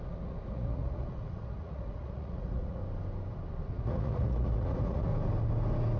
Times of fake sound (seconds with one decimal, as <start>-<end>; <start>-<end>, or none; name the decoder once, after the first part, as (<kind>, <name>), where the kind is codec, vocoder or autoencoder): 0.0-2.8 (vocoder, Vocos); 3.7-5.1